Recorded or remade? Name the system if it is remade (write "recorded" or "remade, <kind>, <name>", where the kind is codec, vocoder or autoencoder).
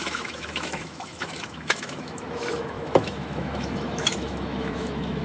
remade, autoencoder, DAC-VAE